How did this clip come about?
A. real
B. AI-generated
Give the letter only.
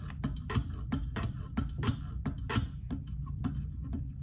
A